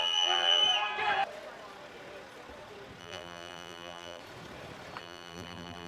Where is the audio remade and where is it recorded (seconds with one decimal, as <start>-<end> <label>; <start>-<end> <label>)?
0.0-0.6 remade; 0.6-3.0 recorded; 3.0-4.2 remade; 4.2-5.0 recorded; 5.0-5.9 remade